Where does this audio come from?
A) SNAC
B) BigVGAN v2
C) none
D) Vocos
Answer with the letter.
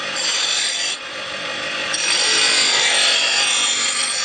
B